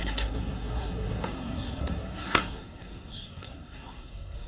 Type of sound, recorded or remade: remade